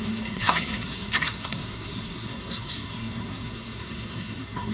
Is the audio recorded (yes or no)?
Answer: no